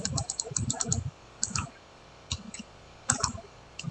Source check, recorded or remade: remade